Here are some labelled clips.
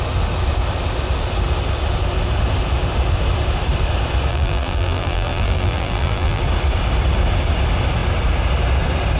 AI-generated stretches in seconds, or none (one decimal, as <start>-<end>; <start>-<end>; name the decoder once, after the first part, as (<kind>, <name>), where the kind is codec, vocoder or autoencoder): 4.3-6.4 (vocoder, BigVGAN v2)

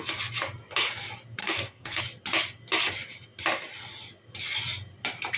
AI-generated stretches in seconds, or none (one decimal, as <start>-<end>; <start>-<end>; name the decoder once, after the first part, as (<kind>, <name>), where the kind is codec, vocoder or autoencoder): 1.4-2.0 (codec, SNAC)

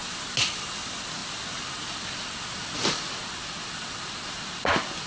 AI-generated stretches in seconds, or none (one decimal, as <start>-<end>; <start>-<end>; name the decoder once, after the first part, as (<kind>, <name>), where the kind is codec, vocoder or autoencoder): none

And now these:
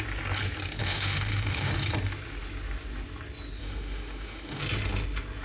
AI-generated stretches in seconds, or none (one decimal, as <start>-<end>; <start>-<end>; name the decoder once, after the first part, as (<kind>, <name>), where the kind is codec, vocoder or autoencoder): 0.8-1.7 (autoencoder, DAC-VAE); 3.6-4.6